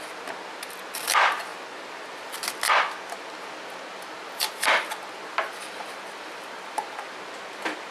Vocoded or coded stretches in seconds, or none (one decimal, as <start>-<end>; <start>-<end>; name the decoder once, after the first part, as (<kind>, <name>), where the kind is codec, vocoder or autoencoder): none